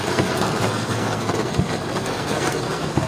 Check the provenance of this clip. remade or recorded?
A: remade